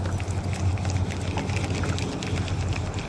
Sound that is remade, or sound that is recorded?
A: recorded